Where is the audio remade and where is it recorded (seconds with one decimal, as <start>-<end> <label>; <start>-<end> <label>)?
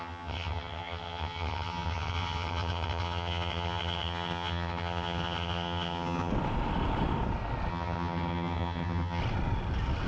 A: 0.0-6.3 remade; 6.3-7.7 recorded; 7.7-9.2 remade; 9.2-10.1 recorded